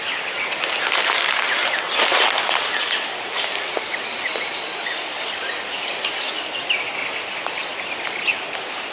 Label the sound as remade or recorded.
recorded